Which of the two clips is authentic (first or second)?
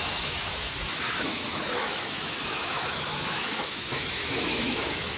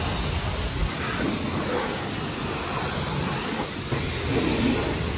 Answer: second